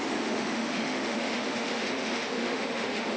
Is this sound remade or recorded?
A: remade